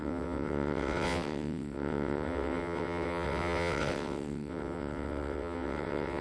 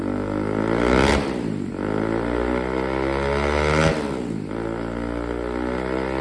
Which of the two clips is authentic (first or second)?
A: second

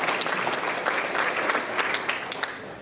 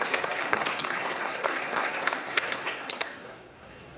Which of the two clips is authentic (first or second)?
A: first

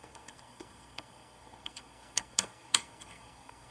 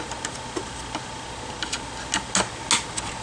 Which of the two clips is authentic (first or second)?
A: second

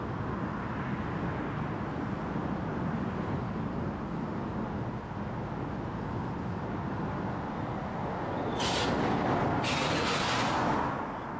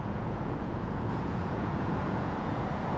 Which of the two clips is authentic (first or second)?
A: first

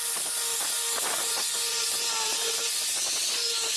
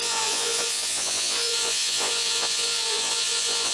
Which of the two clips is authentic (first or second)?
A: first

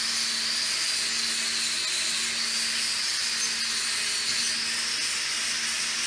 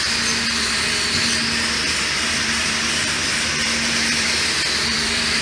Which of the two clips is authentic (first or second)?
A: first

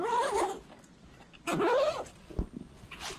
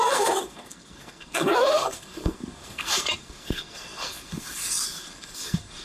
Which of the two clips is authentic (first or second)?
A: first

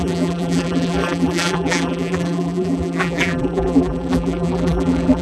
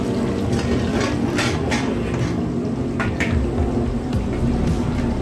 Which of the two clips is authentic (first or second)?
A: second